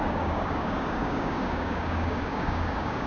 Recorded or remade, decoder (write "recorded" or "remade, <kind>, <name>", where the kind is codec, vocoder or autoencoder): remade, codec, DAC